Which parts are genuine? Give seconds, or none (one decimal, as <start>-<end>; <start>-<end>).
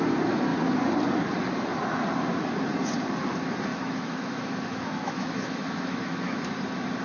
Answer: 0.0-3.7; 6.4-7.0